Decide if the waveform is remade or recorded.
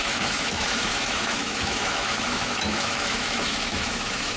remade